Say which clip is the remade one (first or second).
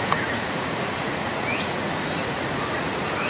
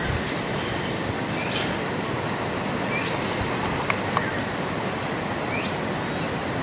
first